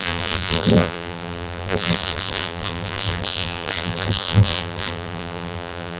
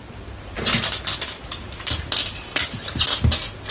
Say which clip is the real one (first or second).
second